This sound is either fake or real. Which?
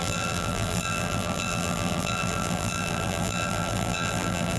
fake